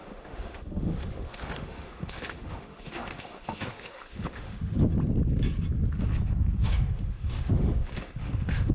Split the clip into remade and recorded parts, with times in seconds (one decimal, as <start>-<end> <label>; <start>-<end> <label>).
0.0-4.9 remade; 4.9-6.6 recorded; 6.6-8.7 remade